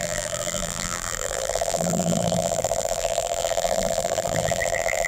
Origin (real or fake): fake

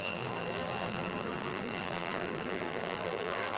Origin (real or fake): fake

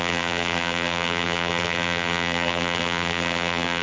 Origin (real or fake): fake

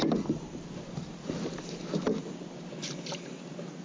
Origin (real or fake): real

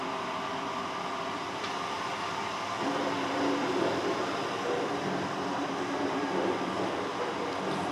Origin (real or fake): fake